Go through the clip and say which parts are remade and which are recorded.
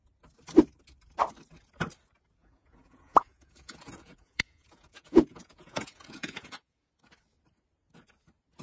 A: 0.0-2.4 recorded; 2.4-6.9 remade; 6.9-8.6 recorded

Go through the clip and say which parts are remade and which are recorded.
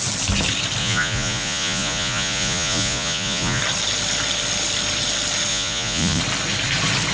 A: 0.0-0.8 recorded; 0.8-3.6 remade; 3.6-5.5 recorded; 5.5-6.2 remade; 6.2-7.1 recorded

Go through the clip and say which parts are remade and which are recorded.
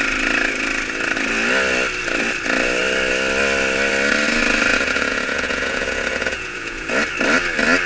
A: 0.0-4.7 recorded; 4.7-6.9 remade; 6.9-7.9 recorded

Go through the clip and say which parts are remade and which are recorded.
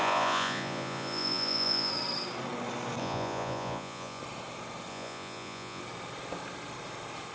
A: 0.0-1.9 remade; 1.9-3.0 recorded; 3.0-4.2 remade; 4.2-4.9 recorded; 4.9-5.8 remade; 5.8-7.3 recorded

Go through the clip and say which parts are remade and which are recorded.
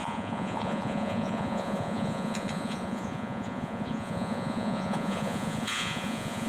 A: 0.0-6.5 remade